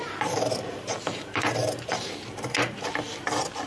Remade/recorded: remade